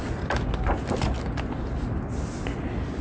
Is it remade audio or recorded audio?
recorded